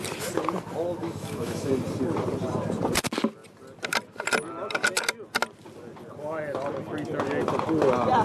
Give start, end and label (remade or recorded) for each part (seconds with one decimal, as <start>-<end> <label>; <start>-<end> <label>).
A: 0.0-1.0 recorded; 1.0-1.7 remade; 1.7-8.2 recorded